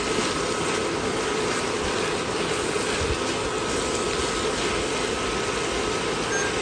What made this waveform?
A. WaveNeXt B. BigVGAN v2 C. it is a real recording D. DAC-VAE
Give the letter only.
C